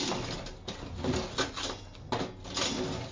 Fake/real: real